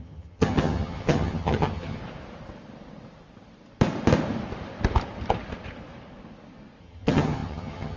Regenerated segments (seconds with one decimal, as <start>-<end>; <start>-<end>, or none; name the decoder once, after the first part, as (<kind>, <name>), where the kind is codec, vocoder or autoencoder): 0.0-2.0 (vocoder, HiFi-GAN); 6.8-8.0